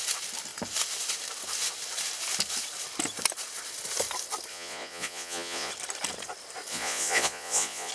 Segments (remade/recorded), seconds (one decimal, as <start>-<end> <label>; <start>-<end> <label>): 0.0-4.5 recorded; 4.5-5.7 remade; 5.7-6.7 recorded; 6.7-7.9 remade